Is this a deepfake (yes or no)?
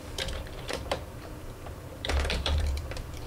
yes